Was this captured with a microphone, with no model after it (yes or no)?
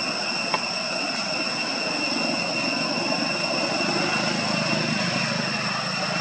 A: yes